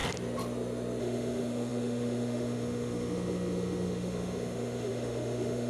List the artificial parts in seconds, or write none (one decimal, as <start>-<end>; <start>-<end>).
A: 1.0-5.7

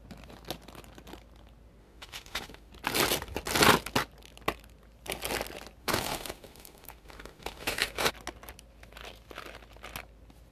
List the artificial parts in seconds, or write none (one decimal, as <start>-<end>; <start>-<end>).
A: 1.8-2.7; 5.8-8.1

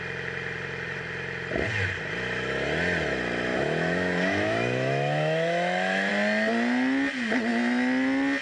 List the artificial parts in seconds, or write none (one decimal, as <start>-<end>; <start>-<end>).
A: 3.5-6.1

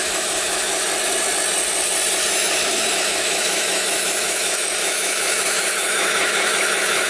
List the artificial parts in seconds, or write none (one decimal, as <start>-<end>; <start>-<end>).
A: 0.0-0.7; 2.3-7.1

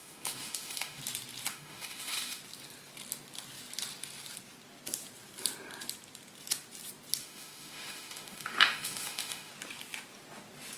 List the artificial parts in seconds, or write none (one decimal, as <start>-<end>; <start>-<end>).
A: 0.0-1.0; 1.5-2.4; 7.2-9.5

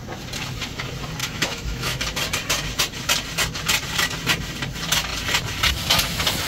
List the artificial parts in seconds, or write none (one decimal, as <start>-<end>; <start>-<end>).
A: 1.2-2.0

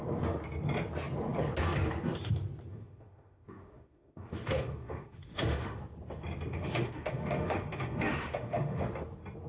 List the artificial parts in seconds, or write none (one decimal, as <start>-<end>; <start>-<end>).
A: 2.7-5.8; 6.5-8.8

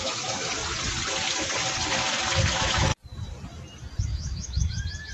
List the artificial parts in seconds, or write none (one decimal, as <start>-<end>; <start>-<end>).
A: 0.0-0.6; 2.5-2.9; 4.0-5.1